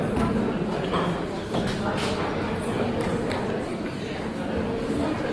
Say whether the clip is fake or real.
real